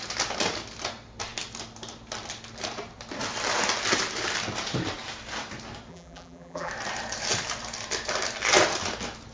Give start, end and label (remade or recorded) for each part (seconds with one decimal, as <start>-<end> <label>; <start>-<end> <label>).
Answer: 0.0-5.9 recorded; 5.9-6.7 remade; 6.7-9.3 recorded